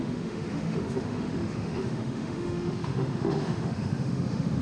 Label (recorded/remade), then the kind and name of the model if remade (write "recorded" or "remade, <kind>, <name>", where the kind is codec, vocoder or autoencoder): remade, autoencoder, DAC-VAE